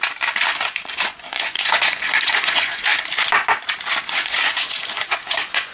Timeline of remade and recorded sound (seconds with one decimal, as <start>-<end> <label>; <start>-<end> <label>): 0.0-0.6 recorded; 0.6-2.9 remade; 2.9-4.0 recorded; 4.0-5.7 remade